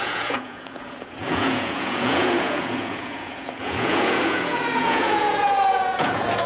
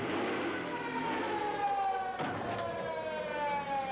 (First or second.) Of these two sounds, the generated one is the first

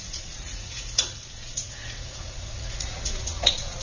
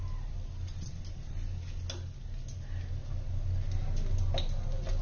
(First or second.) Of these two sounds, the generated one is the first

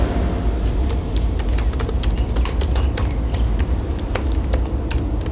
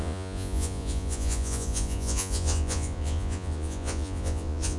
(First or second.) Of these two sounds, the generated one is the second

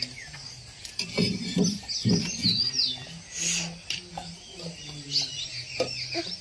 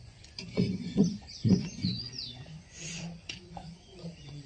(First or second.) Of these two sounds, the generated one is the second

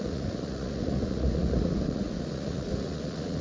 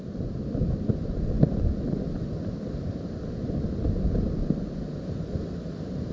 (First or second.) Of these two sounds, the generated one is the first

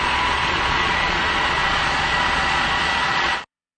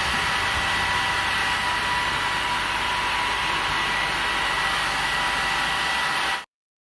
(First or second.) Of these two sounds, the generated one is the first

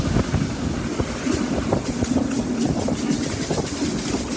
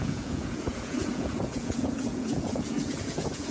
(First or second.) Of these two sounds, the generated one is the second